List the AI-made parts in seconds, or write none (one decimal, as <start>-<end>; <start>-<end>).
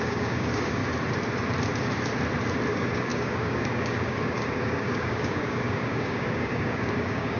0.0-0.8; 2.7-7.4